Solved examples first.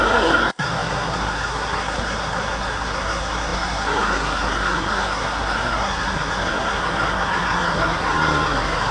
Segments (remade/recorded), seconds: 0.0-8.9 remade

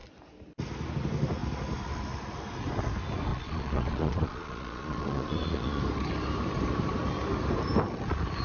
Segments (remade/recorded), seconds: 0.0-3.3 recorded; 3.3-5.8 remade; 5.8-8.4 recorded

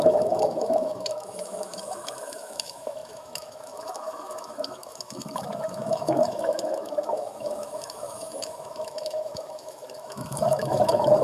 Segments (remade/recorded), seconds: 0.0-11.2 remade